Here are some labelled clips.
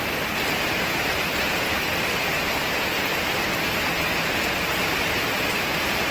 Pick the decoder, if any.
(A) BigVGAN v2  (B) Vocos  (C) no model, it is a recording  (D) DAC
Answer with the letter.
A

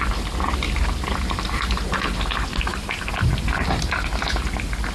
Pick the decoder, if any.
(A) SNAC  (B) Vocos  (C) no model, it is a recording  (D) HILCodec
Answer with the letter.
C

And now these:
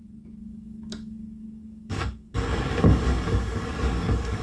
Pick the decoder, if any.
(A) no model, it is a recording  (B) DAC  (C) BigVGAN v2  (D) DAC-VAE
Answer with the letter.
B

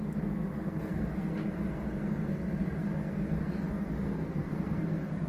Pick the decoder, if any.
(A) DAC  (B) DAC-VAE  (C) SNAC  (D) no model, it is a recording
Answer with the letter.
C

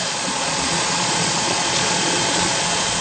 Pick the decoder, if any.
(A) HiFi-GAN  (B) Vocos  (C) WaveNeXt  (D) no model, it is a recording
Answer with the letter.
B